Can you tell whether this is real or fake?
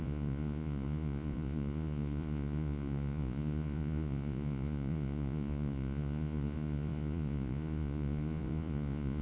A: fake